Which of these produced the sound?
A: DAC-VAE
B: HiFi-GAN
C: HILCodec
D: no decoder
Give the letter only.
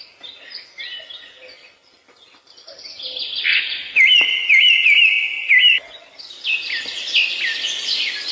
D